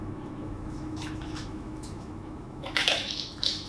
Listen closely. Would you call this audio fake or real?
fake